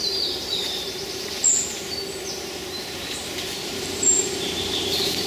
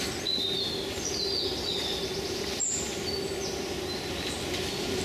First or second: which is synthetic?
first